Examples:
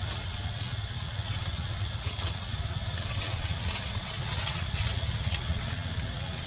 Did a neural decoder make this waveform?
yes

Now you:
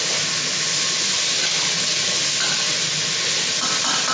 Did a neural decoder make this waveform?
no